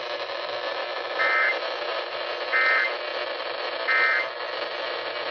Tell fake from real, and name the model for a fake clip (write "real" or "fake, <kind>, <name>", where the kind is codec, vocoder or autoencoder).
real